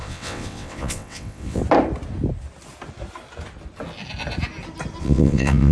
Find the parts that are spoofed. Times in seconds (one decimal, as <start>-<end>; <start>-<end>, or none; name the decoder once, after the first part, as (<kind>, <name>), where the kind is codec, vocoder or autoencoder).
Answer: 0.0-1.6 (vocoder, WaveNeXt); 5.0-5.7